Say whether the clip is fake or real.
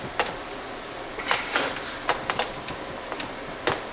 real